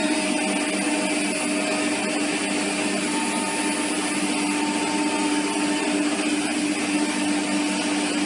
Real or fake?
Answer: real